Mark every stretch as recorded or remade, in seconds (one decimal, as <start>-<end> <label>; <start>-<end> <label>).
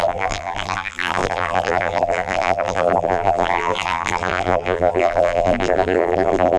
0.0-6.6 remade